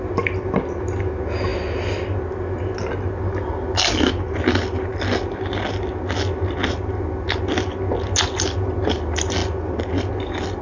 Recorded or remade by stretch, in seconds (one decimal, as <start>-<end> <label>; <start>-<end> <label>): 0.0-10.6 recorded